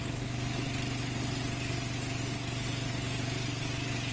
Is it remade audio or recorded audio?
recorded